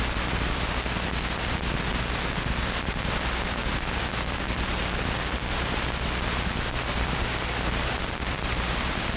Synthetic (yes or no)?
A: no